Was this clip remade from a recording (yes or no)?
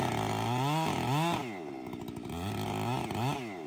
no